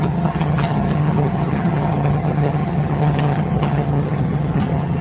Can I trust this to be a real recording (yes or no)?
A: no